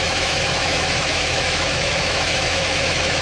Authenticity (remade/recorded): remade